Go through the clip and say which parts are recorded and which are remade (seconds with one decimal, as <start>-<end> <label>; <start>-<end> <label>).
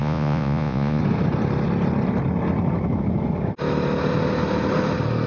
0.0-1.0 remade; 1.0-5.3 recorded